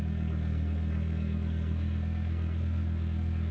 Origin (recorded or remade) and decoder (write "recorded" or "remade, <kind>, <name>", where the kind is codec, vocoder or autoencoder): remade, codec, SNAC